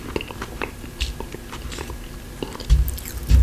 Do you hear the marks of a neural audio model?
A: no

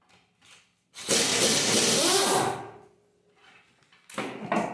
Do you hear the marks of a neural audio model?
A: no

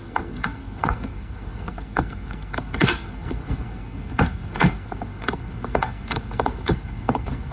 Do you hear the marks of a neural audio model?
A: yes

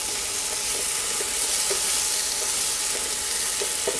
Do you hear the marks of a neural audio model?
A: no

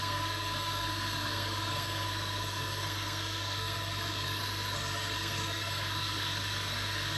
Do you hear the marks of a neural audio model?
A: yes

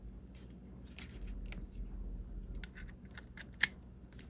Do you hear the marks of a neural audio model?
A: no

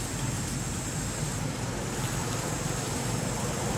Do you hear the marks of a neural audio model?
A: no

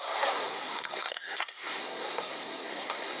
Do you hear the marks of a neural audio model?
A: yes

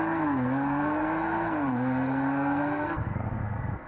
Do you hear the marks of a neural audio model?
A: yes